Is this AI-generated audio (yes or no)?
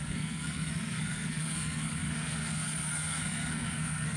yes